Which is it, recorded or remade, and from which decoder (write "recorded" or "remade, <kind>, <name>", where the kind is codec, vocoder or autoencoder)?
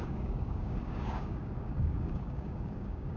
remade, codec, DAC